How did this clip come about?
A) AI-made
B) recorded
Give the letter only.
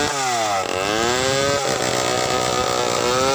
B